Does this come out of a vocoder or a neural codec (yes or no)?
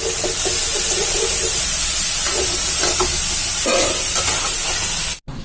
no